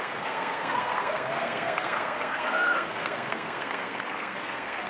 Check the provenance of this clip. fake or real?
fake